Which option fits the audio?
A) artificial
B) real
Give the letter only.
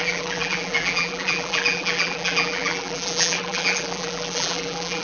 A